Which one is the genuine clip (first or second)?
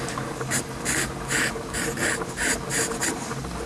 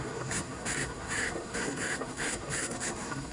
first